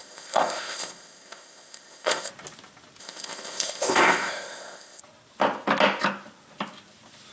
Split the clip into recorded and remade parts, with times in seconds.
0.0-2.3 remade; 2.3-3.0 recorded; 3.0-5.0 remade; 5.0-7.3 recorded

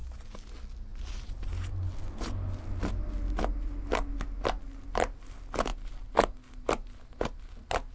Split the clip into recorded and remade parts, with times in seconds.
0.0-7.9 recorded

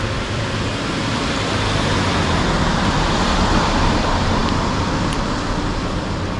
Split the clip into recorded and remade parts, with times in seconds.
0.0-6.4 remade

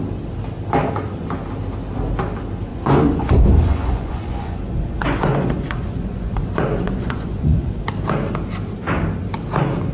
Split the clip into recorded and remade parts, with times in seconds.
0.0-2.7 recorded; 2.7-7.8 remade; 7.8-9.9 recorded

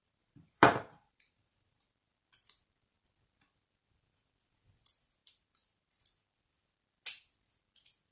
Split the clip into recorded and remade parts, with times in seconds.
0.0-1.8 remade; 1.8-5.2 recorded; 5.2-6.0 remade; 6.0-8.1 recorded

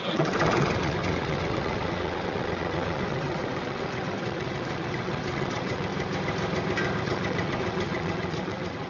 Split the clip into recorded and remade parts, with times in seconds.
0.0-5.9 remade; 5.9-7.0 recorded; 7.0-8.9 remade

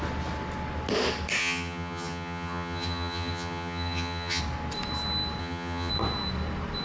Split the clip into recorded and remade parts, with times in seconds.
0.0-1.4 recorded; 1.4-4.4 remade; 4.4-5.4 recorded; 5.4-5.9 remade; 5.9-6.8 recorded